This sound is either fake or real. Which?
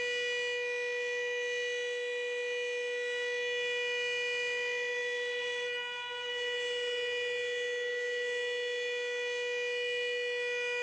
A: real